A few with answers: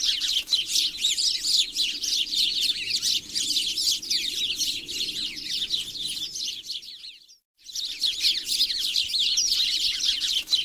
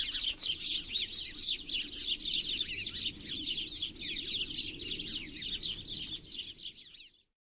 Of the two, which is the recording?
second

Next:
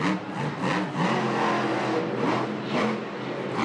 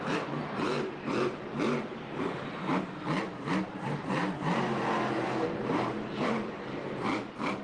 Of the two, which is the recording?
first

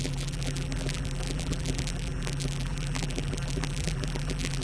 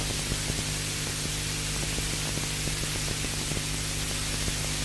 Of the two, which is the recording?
second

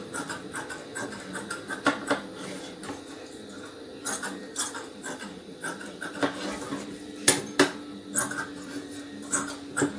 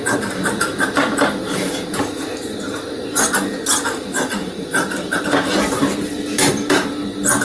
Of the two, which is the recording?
first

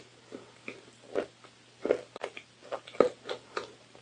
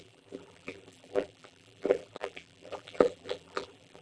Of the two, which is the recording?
first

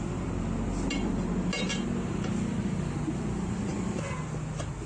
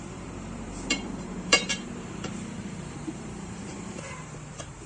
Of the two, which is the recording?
first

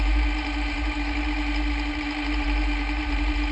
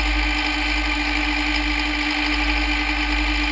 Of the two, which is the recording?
second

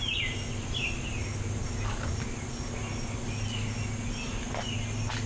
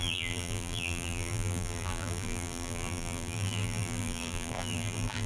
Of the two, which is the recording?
first